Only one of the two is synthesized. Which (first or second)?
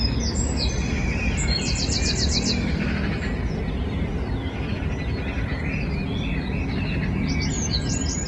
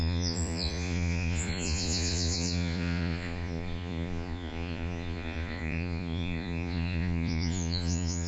second